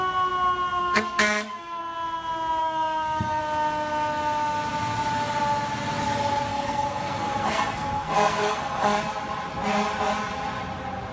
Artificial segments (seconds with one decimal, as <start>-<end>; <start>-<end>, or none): 0.8-1.8; 2.6-3.4; 6.5-9.0